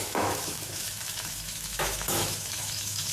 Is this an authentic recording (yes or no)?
no